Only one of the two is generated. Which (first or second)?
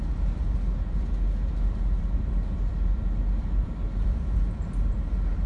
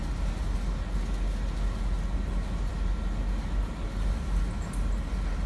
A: first